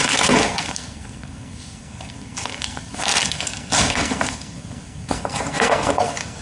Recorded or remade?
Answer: remade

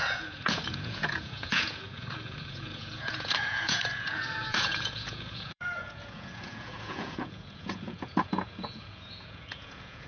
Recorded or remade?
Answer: remade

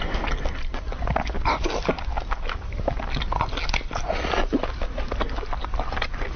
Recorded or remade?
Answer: recorded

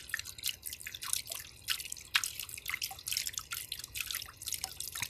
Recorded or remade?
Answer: recorded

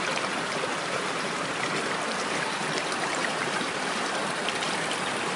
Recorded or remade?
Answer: remade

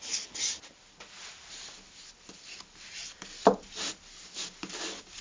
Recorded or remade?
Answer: recorded